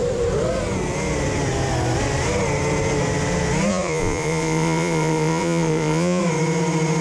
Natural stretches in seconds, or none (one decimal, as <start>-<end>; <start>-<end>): 0.0-3.7; 6.2-7.0